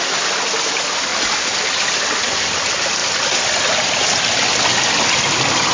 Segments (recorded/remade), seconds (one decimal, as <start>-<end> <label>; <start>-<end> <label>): 0.0-5.7 recorded